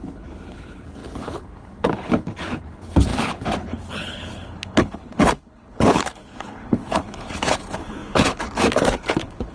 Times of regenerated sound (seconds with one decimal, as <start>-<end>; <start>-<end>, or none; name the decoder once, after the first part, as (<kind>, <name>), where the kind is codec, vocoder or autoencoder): 0.0-9.5 (codec, HILCodec)